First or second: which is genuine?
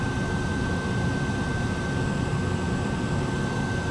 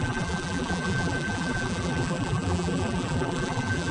first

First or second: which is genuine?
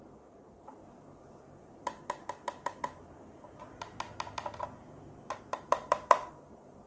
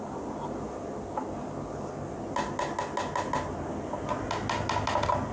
second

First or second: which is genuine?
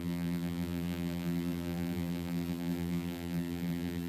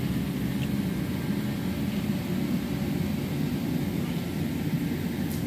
second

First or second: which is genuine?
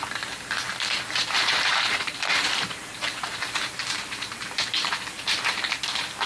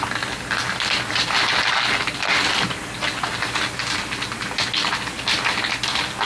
second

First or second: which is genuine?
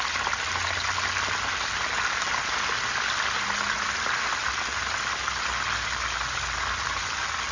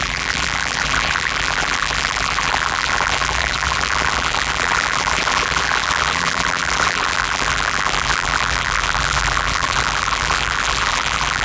first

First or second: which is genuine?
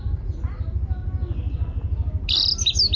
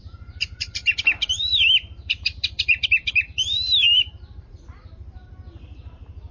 first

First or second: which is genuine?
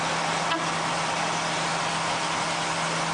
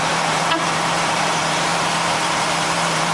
first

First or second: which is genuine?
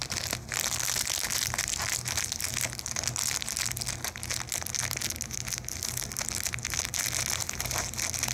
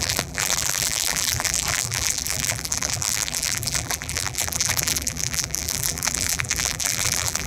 first